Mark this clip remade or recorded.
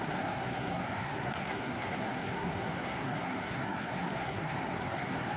remade